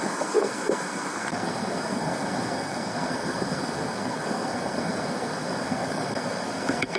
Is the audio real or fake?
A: fake